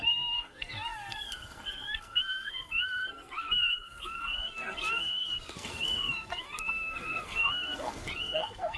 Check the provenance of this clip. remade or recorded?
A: remade